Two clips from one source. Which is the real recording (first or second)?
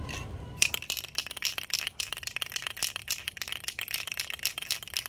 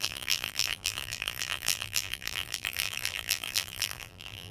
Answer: first